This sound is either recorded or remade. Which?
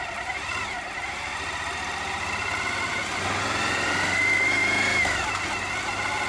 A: recorded